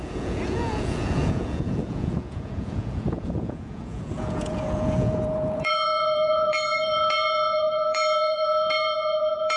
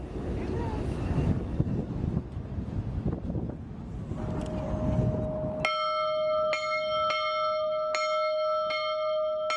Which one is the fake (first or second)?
first